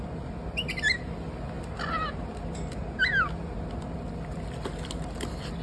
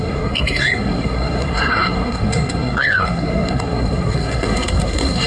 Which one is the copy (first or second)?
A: second